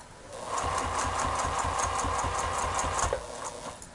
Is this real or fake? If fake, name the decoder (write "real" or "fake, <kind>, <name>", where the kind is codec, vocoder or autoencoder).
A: real